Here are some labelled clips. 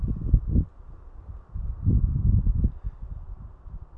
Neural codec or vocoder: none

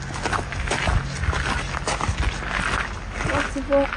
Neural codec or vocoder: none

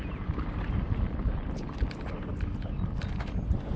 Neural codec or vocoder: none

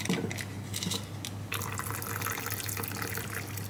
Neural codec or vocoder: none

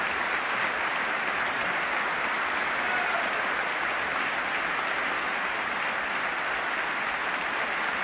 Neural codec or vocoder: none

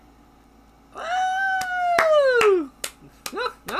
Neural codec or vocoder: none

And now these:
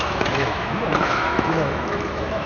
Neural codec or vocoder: autoencoder, DAC-VAE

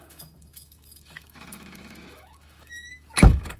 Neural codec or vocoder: autoencoder, DAC-VAE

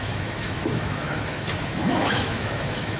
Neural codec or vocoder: autoencoder, DAC-VAE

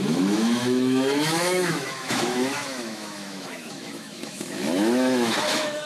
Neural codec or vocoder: autoencoder, DAC-VAE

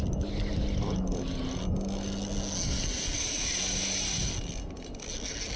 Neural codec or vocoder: none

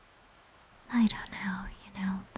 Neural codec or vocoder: autoencoder, DAC-VAE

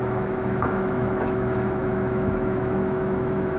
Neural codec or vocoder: autoencoder, DAC-VAE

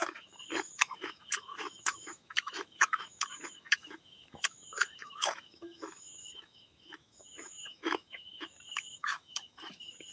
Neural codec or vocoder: autoencoder, DAC-VAE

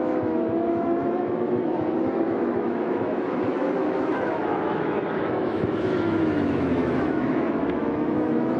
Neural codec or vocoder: autoencoder, DAC-VAE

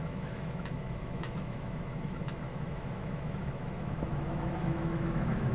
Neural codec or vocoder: autoencoder, DAC-VAE